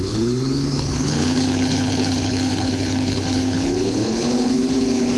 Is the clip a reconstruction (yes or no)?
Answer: yes